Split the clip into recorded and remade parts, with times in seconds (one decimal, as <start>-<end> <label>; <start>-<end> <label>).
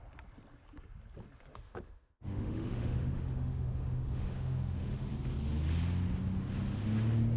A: 0.0-1.5 recorded; 1.5-5.1 remade; 5.1-7.4 recorded